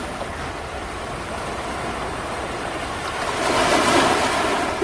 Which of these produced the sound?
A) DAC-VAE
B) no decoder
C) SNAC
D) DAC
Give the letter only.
B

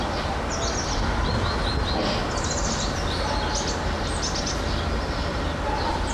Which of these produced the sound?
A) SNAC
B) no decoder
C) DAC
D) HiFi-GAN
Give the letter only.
B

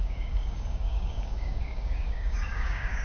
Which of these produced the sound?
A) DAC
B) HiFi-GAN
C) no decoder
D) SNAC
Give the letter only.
A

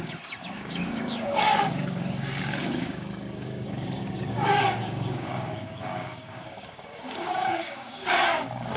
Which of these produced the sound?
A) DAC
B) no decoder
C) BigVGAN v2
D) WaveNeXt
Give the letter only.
A